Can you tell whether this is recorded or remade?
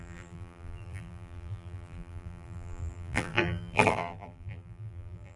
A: remade